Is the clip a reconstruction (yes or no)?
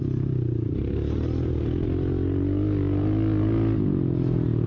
no